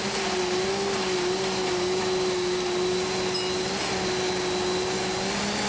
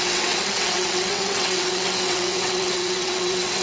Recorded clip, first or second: first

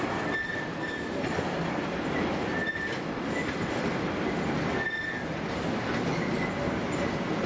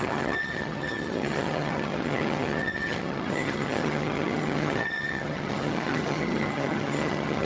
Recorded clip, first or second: first